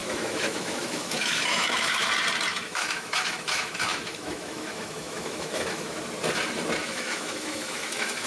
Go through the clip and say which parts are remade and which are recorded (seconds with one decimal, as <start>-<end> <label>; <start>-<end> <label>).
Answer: 0.0-2.1 remade; 2.1-2.5 recorded; 2.5-6.0 remade; 6.0-6.8 recorded; 6.8-8.3 remade